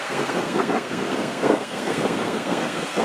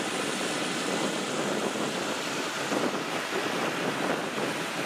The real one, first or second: second